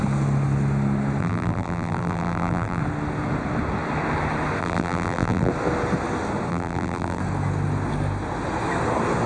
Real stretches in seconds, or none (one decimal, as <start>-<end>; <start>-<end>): 0.0-1.2; 2.8-4.6; 5.5-6.5; 7.2-9.3